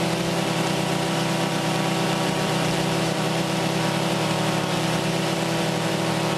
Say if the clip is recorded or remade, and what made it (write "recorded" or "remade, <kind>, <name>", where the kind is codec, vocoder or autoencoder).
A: remade, vocoder, BigVGAN v2